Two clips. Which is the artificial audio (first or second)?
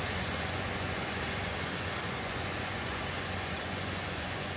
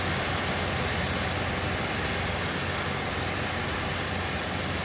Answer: first